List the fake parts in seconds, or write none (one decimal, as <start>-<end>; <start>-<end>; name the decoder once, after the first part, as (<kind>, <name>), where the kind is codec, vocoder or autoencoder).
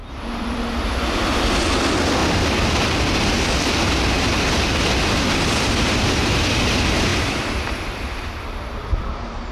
0.0-0.6 (vocoder, BigVGAN v2); 2.2-3.2; 7.1-9.0